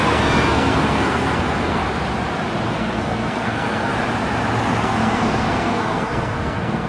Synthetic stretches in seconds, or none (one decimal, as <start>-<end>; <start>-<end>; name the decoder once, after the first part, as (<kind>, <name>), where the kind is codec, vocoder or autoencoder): 0.0-1.8 (codec, SNAC); 2.7-3.9; 4.8-6.9